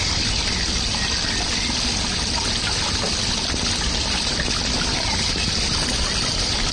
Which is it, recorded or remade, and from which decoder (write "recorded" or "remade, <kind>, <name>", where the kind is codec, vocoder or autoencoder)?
recorded